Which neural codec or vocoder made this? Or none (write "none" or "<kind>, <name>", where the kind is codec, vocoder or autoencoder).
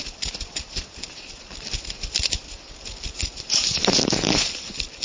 none